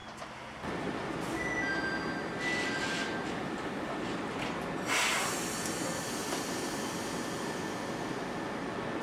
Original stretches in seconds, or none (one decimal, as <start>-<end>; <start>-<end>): 0.0-6.2; 6.8-9.0